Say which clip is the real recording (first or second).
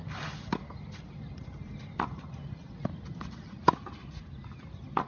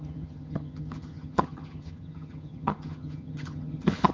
first